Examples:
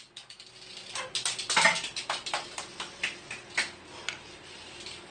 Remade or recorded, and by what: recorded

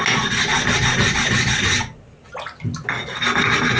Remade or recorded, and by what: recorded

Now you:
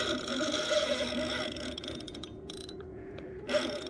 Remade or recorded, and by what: remade, vocoder, Vocos